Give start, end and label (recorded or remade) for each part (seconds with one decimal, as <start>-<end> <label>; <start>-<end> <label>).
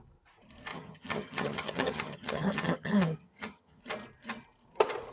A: 0.0-0.7 recorded; 0.7-3.8 remade; 3.8-5.1 recorded